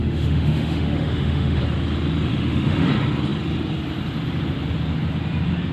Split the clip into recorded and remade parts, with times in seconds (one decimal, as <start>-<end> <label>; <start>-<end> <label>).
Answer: 0.0-1.6 remade; 1.6-2.3 recorded; 2.3-2.9 remade; 2.9-5.7 recorded